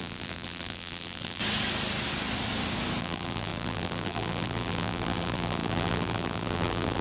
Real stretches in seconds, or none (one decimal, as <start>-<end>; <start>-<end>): 1.4-3.0